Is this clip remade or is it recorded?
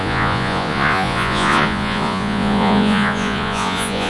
remade